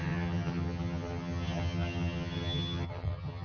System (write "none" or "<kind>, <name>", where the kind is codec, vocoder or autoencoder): vocoder, HiFi-GAN